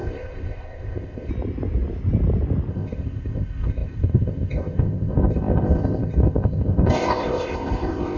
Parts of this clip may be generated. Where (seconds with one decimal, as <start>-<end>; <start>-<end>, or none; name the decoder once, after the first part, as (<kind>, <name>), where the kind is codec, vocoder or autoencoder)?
0.0-1.3 (codec, ZipCodec); 2.7-8.2